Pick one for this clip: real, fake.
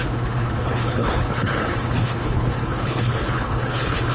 fake